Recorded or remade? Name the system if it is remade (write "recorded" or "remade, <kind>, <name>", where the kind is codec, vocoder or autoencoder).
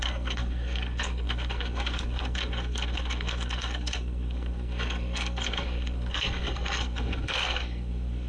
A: remade, codec, SNAC